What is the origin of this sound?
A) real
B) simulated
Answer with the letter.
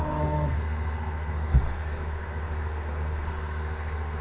B